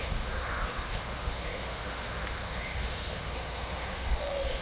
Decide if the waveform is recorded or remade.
remade